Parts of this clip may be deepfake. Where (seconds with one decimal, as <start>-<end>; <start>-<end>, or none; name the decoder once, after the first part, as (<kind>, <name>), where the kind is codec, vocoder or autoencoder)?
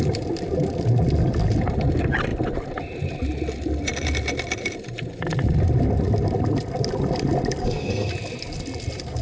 7.6-8.1 (codec, SNAC)